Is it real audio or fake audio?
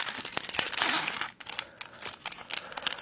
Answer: real